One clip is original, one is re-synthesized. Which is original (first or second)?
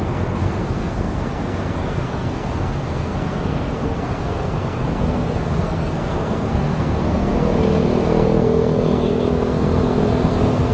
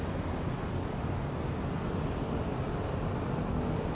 second